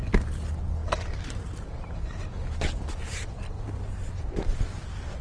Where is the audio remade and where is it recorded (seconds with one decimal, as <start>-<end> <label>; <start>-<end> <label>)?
0.0-5.2 recorded